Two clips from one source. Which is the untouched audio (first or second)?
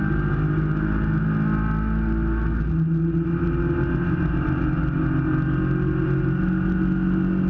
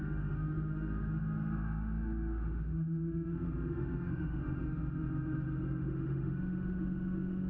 first